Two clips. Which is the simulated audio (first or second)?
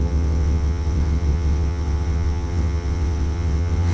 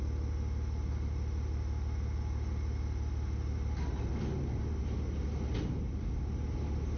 first